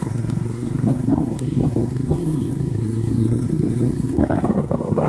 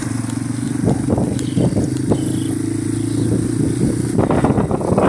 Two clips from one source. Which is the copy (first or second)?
first